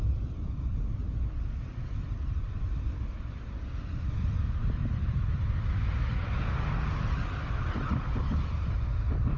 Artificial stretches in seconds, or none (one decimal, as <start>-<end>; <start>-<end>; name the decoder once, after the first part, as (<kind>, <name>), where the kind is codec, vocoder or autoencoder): none